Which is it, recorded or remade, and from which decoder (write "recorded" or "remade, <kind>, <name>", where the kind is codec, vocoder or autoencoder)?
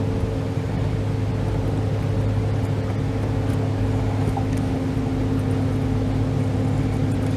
recorded